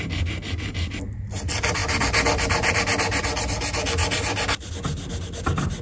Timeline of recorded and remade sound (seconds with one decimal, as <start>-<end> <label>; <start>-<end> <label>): 0.0-5.8 recorded